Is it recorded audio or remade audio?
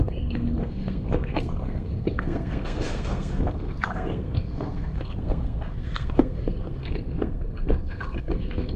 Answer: remade